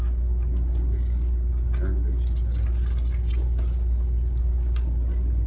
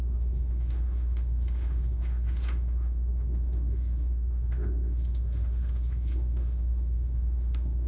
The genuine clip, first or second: first